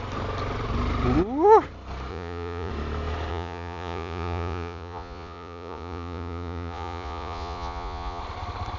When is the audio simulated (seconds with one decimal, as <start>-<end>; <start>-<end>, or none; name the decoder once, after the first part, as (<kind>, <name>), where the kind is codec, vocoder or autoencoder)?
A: 2.1-2.7 (vocoder, Vocos); 3.3-8.2